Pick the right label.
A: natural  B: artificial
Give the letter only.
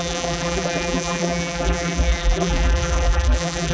B